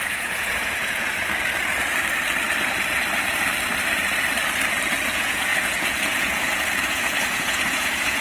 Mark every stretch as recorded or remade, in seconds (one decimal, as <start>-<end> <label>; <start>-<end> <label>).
0.0-1.1 remade; 1.1-5.1 recorded; 5.1-8.2 remade